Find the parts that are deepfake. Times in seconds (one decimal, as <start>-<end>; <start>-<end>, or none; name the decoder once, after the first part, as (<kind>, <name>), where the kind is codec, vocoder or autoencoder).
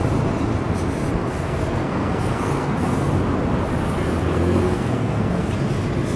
1.2-3.1 (codec, SNAC); 4.3-5.5